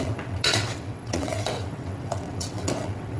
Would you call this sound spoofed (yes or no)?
yes